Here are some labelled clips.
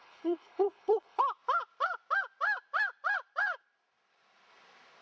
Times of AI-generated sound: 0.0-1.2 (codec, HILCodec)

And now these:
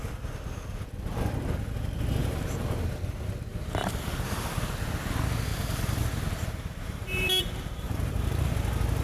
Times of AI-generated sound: 2.2-2.8 (vocoder, BigVGAN v2); 3.5-4.7; 5.5-8.5

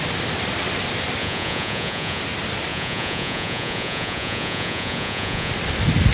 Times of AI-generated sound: 1.2-2.2 (vocoder, Vocos); 2.7-5.5

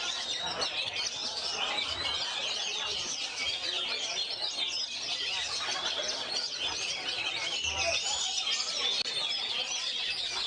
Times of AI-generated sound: none

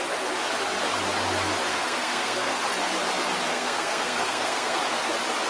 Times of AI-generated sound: 1.7-2.6 (codec, SNAC); 3.5-4.8

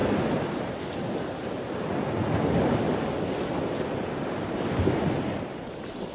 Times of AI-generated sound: none

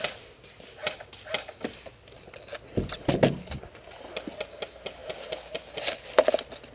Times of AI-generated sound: none